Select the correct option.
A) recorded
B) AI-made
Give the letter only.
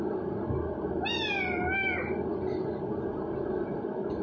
A